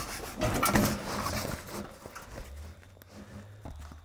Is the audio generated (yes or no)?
no